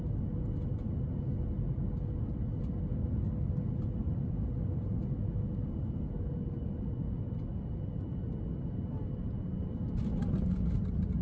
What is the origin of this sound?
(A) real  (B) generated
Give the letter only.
A